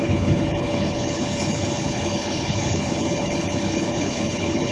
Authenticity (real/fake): fake